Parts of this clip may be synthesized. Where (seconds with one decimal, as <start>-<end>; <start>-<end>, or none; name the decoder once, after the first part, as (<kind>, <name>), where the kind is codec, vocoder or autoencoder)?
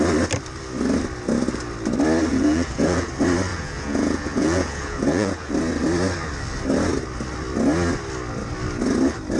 2.3-3.1 (vocoder, Vocos); 3.5-5.5